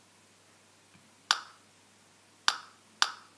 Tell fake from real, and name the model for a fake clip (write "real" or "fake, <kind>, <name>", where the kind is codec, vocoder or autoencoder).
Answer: real